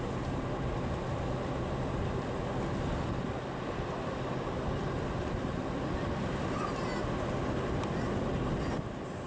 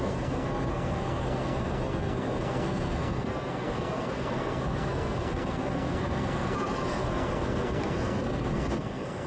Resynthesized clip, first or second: second